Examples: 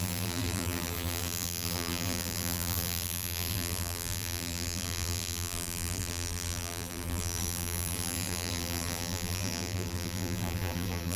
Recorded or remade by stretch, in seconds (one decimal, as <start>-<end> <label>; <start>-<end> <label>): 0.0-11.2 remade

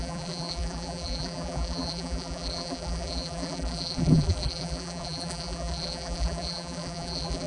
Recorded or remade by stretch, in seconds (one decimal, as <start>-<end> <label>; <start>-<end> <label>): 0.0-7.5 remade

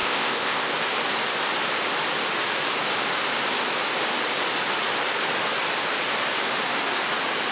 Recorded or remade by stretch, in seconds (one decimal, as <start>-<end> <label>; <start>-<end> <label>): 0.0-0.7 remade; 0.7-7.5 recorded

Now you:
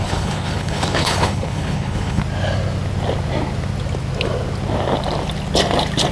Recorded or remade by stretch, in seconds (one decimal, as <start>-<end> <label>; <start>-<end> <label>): 0.0-2.2 remade; 2.2-6.1 recorded